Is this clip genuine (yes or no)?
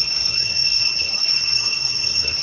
no